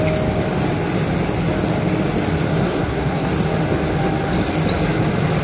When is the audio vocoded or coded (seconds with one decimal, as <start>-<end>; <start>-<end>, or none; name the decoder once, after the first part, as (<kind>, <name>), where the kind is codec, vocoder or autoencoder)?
2.5-3.3 (codec, SNAC)